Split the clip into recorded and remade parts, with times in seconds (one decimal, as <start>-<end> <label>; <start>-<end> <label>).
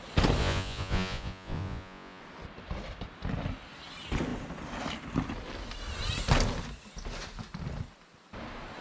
0.0-0.4 recorded; 0.4-2.2 remade; 2.2-8.8 recorded